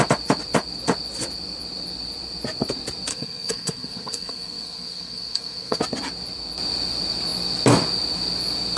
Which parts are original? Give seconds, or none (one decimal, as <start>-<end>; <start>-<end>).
0.0-3.1; 5.8-8.8